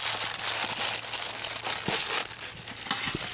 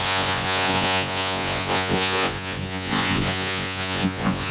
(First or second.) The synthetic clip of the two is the second